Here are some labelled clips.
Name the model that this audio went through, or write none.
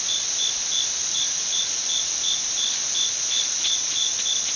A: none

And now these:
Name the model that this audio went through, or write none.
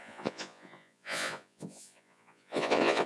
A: vocoder, Vocos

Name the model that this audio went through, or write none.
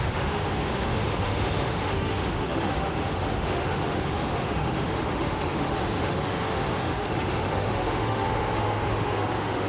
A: autoencoder, DAC-VAE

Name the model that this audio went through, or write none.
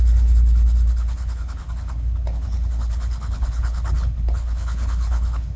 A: codec, HILCodec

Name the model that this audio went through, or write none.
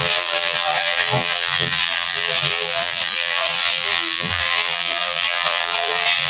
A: vocoder, BigVGAN v2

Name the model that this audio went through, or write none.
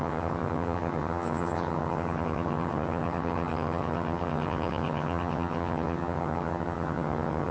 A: vocoder, HiFi-GAN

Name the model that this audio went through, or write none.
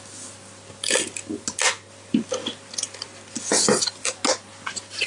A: none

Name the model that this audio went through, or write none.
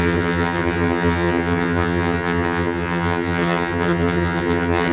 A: vocoder, HiFi-GAN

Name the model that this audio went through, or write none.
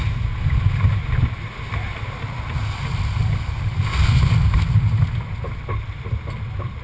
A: none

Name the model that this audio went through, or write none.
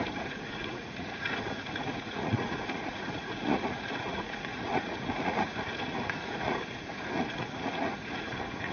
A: vocoder, Vocos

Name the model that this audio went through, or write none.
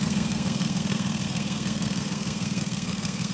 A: codec, SNAC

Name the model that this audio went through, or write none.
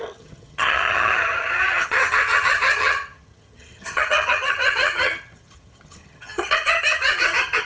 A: vocoder, HiFi-GAN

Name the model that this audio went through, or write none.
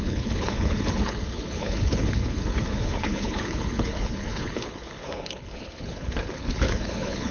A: codec, HILCodec